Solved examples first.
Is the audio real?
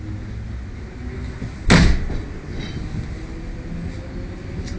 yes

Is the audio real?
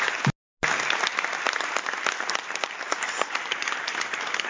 yes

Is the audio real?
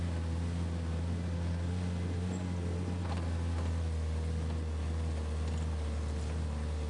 yes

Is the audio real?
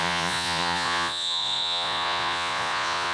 no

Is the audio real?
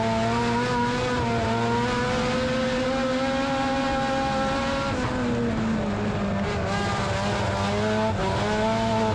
yes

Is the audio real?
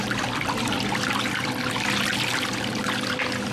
yes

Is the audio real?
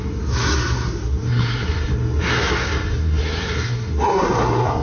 no